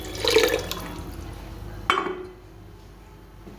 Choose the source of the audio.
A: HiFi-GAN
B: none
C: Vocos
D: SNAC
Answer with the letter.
B